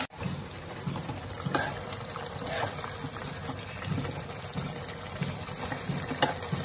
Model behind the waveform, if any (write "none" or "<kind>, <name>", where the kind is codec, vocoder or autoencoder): none